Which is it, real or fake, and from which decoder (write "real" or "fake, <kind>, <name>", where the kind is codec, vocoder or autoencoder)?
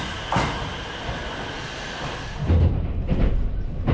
real